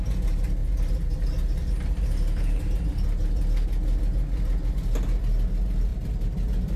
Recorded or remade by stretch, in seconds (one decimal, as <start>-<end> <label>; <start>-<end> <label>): 0.0-6.8 recorded